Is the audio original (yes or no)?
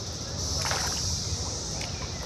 yes